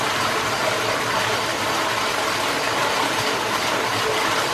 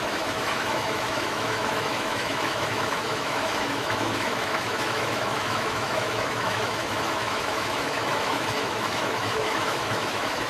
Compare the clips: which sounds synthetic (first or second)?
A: second